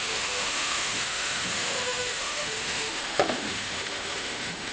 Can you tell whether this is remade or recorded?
remade